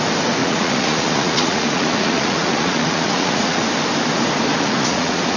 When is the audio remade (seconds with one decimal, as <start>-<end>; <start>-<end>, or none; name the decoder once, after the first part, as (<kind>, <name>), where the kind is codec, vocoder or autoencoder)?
0.4-3.6 (vocoder, Vocos); 4.5-5.4